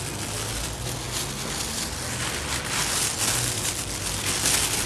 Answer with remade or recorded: recorded